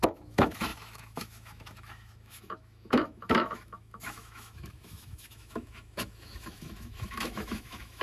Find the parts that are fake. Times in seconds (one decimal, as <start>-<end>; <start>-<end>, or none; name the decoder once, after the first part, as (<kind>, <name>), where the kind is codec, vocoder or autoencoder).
0.0-8.0 (autoencoder, DAC-VAE)